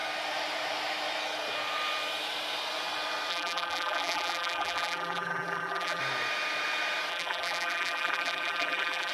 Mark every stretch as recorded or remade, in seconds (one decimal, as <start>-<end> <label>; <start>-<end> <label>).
0.0-3.3 recorded; 3.3-6.0 remade; 6.0-7.1 recorded; 7.1-9.1 remade